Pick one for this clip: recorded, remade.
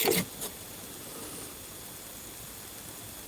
recorded